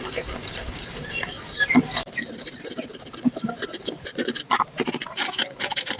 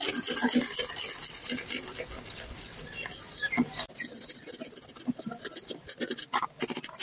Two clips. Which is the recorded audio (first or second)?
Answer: second